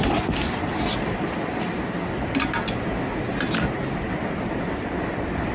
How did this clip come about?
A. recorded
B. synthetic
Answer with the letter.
A